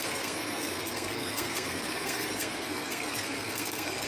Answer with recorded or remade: remade